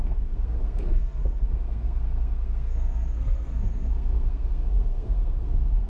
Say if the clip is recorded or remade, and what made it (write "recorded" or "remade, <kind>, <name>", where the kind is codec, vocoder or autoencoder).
remade, codec, SNAC